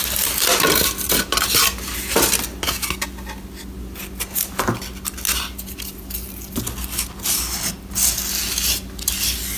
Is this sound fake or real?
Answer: real